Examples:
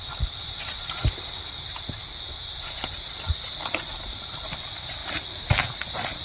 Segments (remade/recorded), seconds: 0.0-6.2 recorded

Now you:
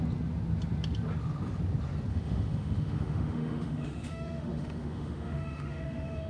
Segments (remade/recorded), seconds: 0.0-2.1 recorded; 2.1-6.3 remade

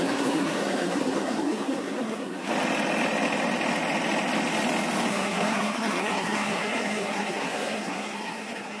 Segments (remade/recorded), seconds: 0.0-2.5 remade; 2.5-5.1 recorded; 5.1-8.8 remade

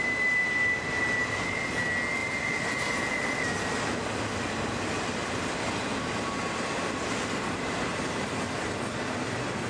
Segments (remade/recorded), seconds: 0.0-2.2 recorded; 2.2-3.1 remade; 3.1-7.9 recorded; 7.9-8.6 remade; 8.6-9.7 recorded

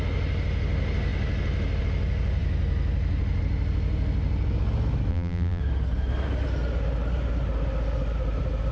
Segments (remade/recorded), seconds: 0.0-5.1 recorded; 5.1-5.6 remade; 5.6-8.7 recorded

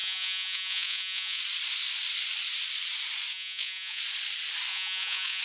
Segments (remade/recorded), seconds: 0.0-1.4 remade; 1.4-3.3 recorded; 3.3-4.0 remade; 4.0-4.7 recorded; 4.7-5.4 remade

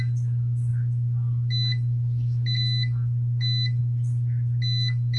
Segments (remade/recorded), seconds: 0.0-5.2 recorded

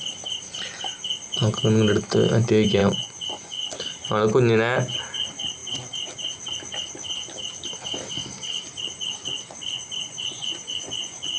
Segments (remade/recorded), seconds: 0.0-2.8 recorded; 2.8-3.7 remade; 3.7-9.6 recorded; 9.6-11.4 remade